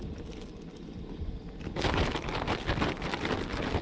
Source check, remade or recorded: recorded